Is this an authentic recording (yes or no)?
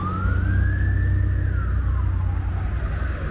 yes